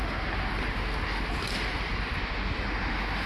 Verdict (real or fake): real